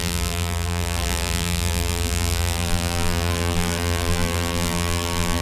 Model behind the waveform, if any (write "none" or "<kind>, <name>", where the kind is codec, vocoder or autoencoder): vocoder, BigVGAN v2